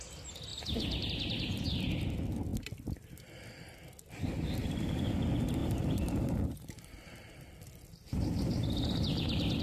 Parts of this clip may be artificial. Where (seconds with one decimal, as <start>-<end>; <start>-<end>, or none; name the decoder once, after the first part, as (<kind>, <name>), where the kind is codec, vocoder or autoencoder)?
0.5-1.1 (vocoder, BigVGAN v2); 5.6-6.9